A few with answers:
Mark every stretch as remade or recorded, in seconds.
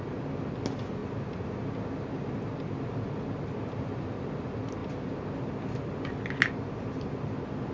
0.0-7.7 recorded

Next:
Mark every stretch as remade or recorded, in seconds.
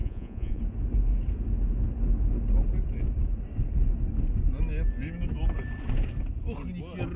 0.0-0.6 remade; 0.6-7.2 recorded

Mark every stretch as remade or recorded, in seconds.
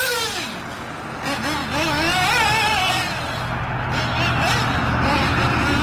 0.0-5.8 recorded